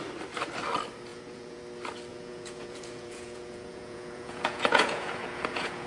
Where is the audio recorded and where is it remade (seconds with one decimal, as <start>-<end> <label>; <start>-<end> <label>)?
0.0-1.1 recorded; 1.1-1.6 remade; 1.6-2.1 recorded; 2.1-5.9 remade